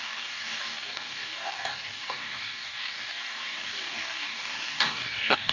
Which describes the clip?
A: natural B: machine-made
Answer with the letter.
B